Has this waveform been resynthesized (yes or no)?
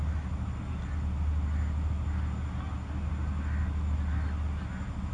no